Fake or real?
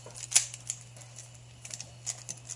real